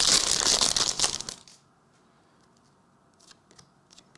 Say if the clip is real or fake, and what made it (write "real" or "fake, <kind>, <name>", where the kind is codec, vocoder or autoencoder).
real